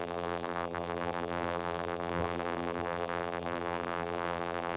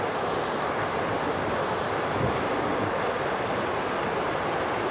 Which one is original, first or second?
second